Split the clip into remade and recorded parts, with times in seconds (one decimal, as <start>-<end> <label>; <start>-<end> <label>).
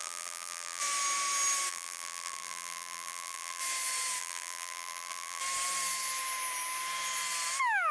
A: 0.0-0.8 remade; 0.8-1.7 recorded; 1.7-3.6 remade; 3.6-4.2 recorded; 4.2-5.4 remade; 5.4-7.9 recorded